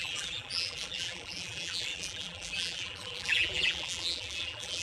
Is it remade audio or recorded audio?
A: remade